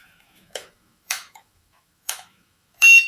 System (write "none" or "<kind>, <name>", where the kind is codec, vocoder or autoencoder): autoencoder, DAC-VAE